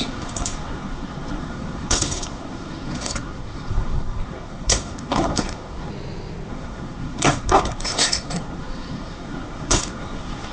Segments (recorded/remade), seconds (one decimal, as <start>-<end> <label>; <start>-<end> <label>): 0.0-5.9 remade; 5.9-6.5 recorded; 6.5-10.5 remade